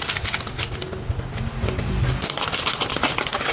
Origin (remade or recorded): recorded